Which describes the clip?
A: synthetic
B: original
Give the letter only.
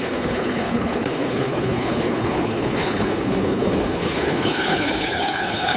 A